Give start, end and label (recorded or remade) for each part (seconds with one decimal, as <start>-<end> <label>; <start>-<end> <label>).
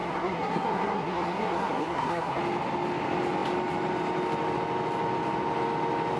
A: 0.0-2.4 remade; 2.4-6.2 recorded